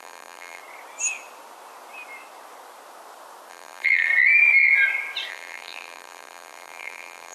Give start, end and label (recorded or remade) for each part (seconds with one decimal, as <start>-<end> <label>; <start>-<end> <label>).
0.0-0.6 remade; 0.6-3.5 recorded; 3.5-4.1 remade; 4.1-5.3 recorded; 5.3-7.3 remade